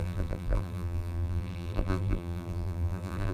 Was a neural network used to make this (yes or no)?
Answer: yes